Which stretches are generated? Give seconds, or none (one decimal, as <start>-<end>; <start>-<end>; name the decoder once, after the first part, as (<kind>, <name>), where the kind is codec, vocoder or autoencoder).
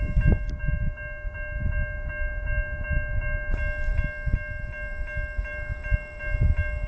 none